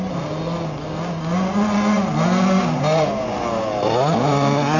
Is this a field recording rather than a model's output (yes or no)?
yes